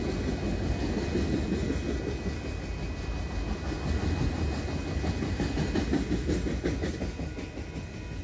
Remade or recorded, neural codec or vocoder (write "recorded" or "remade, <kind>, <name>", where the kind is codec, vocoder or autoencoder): recorded